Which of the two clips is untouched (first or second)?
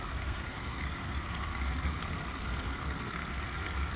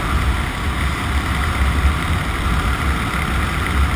second